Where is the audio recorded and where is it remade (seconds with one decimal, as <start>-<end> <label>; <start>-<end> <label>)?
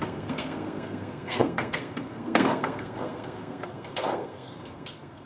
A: 0.0-5.3 remade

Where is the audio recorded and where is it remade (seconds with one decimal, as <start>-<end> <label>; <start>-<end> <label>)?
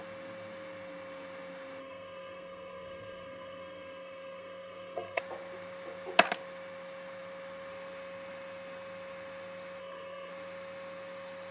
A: 0.0-1.8 recorded; 1.8-5.2 remade; 5.2-9.8 recorded; 9.8-10.3 remade; 10.3-11.5 recorded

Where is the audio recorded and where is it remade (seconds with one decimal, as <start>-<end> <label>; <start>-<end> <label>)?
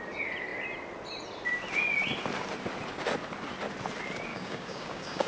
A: 0.0-4.3 recorded; 4.3-5.3 remade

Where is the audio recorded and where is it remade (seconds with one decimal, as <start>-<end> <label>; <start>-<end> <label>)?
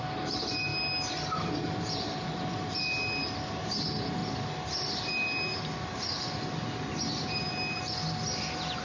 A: 0.0-8.8 recorded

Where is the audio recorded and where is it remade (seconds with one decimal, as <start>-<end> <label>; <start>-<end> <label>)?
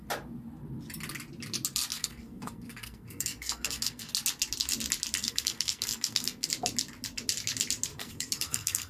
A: 0.0-1.9 recorded; 1.9-4.1 remade; 4.1-5.2 recorded; 5.2-6.5 remade; 6.5-7.9 recorded; 7.9-8.9 remade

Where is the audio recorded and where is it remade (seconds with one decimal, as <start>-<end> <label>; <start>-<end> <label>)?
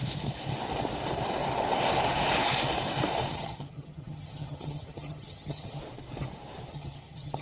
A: 0.0-3.3 recorded; 3.3-5.8 remade; 5.8-6.7 recorded; 6.7-7.4 remade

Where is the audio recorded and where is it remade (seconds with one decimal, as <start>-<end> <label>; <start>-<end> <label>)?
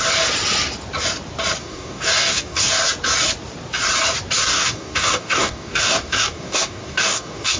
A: 0.0-1.6 recorded; 1.6-2.7 remade; 2.7-4.5 recorded; 4.5-7.6 remade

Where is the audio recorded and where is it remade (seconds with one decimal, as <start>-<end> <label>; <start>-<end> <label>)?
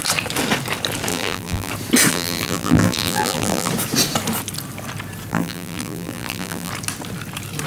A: 0.0-1.1 recorded; 1.1-1.7 remade; 1.7-2.1 recorded; 2.1-3.7 remade; 3.7-5.3 recorded; 5.3-6.7 remade; 6.7-7.7 recorded